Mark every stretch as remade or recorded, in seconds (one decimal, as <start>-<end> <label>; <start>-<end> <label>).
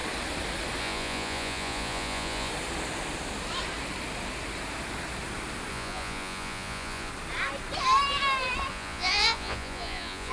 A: 0.0-0.8 recorded; 0.8-2.5 remade; 2.5-5.7 recorded; 5.7-7.1 remade; 7.1-8.7 recorded; 8.7-10.3 remade